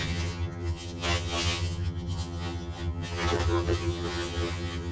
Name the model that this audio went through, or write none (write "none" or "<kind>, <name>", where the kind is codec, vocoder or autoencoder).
vocoder, HiFi-GAN